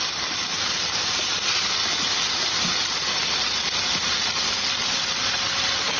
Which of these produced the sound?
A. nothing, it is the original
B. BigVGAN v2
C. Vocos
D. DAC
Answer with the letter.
A